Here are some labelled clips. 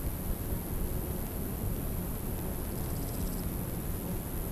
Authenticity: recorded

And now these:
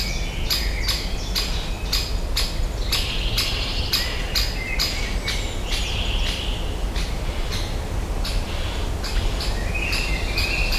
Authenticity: recorded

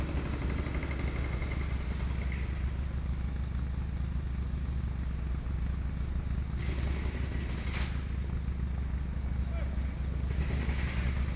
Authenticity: recorded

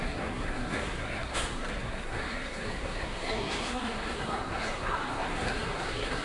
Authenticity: remade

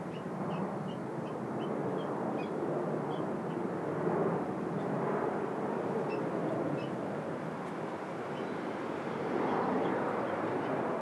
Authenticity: recorded